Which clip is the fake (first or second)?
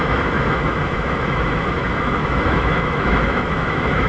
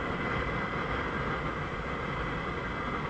first